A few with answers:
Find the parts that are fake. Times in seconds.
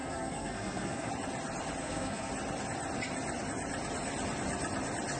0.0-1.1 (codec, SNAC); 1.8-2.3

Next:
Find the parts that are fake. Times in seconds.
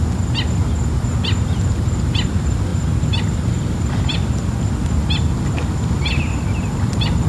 none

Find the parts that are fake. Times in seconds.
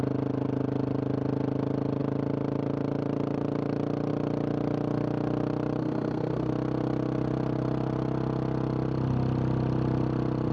5.8-6.5 (codec, SNAC)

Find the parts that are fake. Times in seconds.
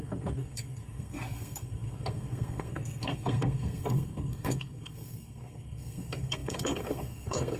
0.0-7.6 (codec, SNAC)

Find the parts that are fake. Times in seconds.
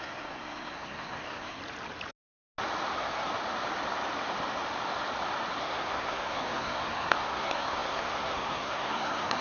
0.0-1.6 (codec, SNAC); 2.9-3.3; 5.6-9.4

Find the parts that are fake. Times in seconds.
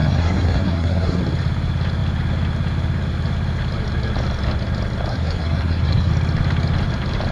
0.0-1.2 (codec, SNAC); 5.1-6.1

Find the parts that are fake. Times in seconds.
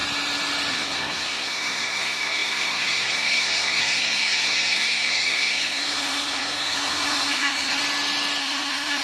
0.7-7.8 (codec, SNAC); 8.4-9.0